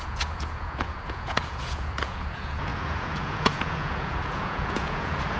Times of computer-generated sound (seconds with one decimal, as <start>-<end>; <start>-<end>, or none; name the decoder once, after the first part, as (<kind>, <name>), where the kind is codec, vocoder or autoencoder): 0.0-5.4 (vocoder, Vocos)